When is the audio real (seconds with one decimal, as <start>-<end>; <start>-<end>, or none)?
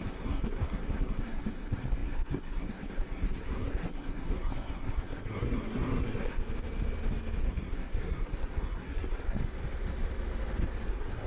6.4-7.4; 9.4-10.9